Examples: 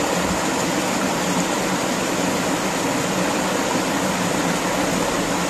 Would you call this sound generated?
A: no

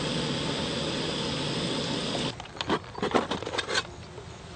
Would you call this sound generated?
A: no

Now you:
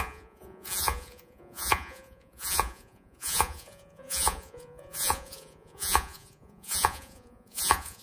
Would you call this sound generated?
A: yes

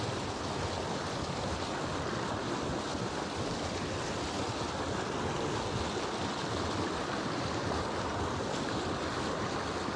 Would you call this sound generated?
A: no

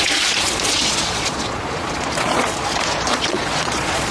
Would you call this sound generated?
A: yes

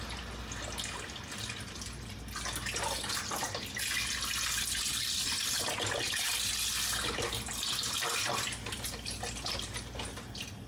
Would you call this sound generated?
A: no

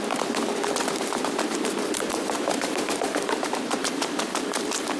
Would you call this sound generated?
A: yes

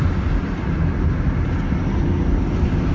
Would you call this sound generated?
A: no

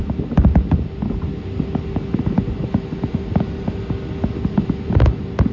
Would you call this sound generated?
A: no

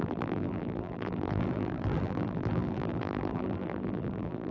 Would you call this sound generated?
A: yes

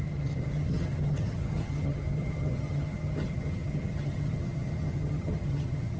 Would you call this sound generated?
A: yes